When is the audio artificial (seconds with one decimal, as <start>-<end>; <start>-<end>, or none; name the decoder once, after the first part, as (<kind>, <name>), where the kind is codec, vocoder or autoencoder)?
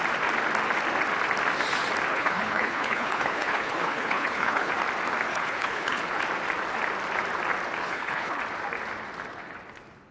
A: 2.1-4.7 (codec, HILCodec); 5.3-6.2; 7.8-8.4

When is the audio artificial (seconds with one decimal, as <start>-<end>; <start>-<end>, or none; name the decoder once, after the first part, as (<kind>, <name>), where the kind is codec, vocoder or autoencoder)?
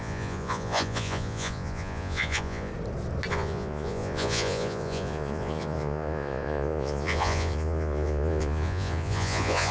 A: 0.0-2.7 (vocoder, Vocos); 3.3-9.7